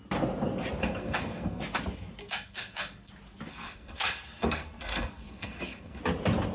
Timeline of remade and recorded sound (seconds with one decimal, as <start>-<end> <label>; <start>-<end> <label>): 0.0-0.8 recorded; 0.8-1.6 remade; 1.6-2.2 recorded; 2.2-3.1 remade; 3.1-3.5 recorded; 3.5-6.0 remade; 6.0-6.5 recorded